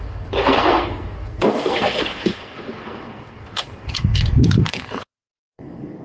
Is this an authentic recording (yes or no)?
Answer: no